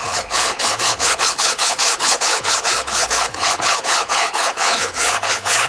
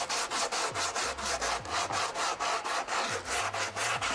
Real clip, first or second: second